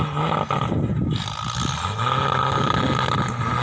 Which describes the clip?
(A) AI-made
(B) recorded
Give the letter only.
B